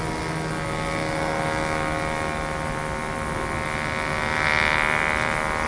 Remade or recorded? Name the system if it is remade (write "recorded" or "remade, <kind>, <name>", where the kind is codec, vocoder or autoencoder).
recorded